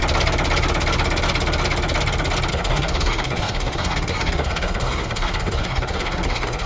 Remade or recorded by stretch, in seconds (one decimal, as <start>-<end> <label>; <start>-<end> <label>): 0.0-2.5 recorded; 2.5-6.7 remade